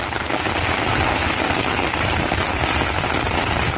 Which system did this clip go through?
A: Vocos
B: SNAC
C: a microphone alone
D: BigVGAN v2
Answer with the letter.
C